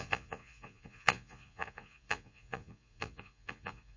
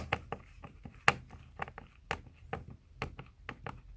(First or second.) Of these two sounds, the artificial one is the first